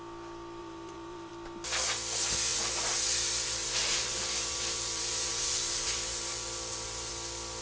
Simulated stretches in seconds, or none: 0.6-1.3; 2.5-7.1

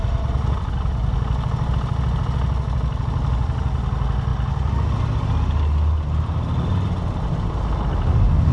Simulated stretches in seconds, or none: none

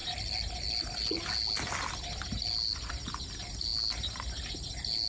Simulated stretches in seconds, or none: none

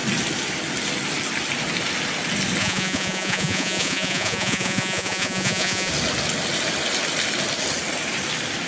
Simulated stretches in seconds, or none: 2.6-5.9